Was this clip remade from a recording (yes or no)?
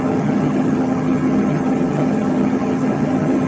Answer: yes